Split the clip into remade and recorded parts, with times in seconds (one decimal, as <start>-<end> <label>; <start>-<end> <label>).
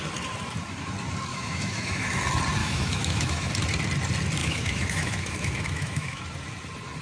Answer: 0.0-1.3 recorded; 1.3-2.2 remade; 2.2-2.6 recorded; 2.6-3.5 remade; 3.5-4.4 recorded; 4.4-6.2 remade; 6.2-7.0 recorded